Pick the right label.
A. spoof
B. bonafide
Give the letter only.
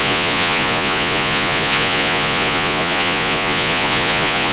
A